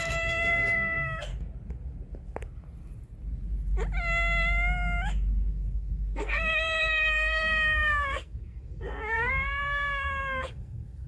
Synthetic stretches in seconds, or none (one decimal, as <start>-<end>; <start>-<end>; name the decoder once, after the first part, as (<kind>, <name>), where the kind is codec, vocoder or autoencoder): 0.0-1.3 (codec, SNAC); 5.5-11.1